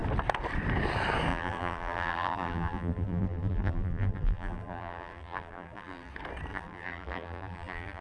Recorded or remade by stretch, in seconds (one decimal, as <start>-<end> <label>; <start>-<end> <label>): 0.0-1.3 recorded; 1.3-6.1 remade; 6.1-6.5 recorded; 6.5-8.0 remade